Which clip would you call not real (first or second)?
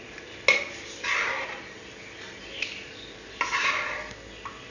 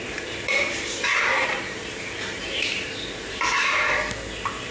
second